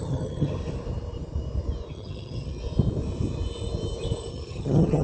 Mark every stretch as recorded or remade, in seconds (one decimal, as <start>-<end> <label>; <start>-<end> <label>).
0.0-0.6 remade; 0.6-1.9 recorded; 1.9-2.6 remade; 2.6-4.3 recorded; 4.3-5.0 remade